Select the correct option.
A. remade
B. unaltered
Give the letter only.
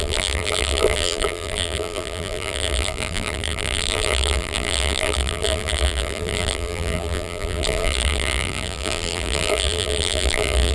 A